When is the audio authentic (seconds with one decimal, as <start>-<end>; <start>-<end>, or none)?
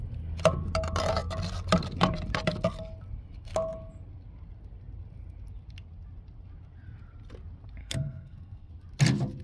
0.0-7.8; 8.7-9.4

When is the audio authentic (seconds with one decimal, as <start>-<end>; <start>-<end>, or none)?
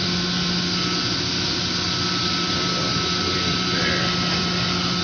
0.0-5.0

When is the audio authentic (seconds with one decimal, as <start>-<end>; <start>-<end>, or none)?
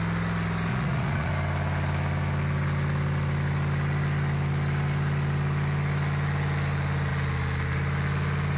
0.0-0.7; 1.3-8.6